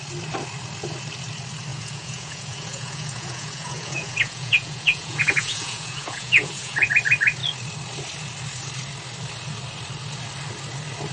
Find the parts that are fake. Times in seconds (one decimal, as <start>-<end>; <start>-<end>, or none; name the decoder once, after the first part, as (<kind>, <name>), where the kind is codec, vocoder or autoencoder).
1.7-6.9 (vocoder, Vocos)